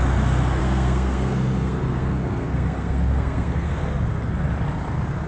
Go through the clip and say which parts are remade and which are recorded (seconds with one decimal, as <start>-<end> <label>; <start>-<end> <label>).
0.0-0.6 recorded; 0.6-3.8 remade; 3.8-5.3 recorded